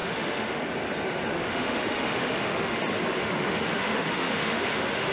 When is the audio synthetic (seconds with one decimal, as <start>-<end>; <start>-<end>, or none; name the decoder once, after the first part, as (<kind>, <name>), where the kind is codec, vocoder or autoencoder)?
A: 0.0-0.6 (autoencoder, DAC-VAE); 1.3-2.8; 3.2-5.1